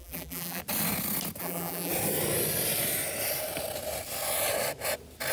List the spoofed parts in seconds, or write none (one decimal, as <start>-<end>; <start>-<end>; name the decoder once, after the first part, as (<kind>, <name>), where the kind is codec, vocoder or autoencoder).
0.0-0.6 (vocoder, BigVGAN v2); 1.4-1.9